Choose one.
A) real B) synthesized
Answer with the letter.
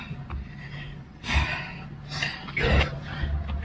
A